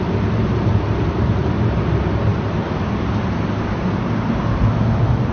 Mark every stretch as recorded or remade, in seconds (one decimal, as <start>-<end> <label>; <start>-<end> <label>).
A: 0.0-5.3 remade